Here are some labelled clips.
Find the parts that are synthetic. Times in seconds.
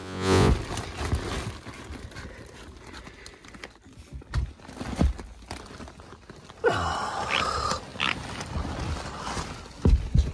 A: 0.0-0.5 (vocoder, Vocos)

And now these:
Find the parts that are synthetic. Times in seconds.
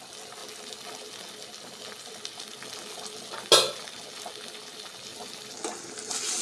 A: none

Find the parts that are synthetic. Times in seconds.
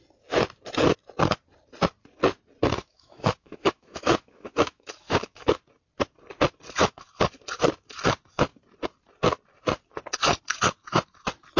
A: 2.8-5.6 (autoencoder, DAC-VAE)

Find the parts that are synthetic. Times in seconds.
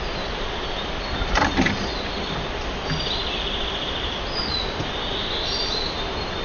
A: none